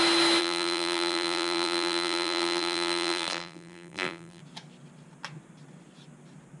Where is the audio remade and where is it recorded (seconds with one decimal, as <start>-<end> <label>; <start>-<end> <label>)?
0.0-0.4 recorded; 0.4-4.4 remade; 4.4-6.6 recorded